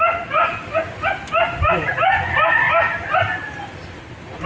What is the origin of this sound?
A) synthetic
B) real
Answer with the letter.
B